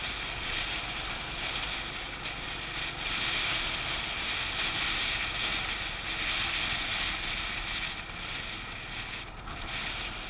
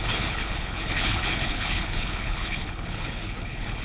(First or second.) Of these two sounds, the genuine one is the first